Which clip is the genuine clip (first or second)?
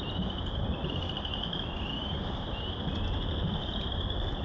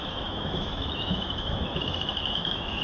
first